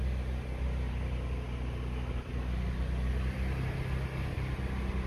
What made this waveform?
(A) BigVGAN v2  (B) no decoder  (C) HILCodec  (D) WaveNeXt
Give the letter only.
B